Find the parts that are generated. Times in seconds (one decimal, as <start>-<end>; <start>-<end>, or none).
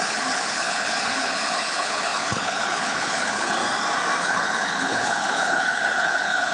0.0-3.6; 4.2-6.5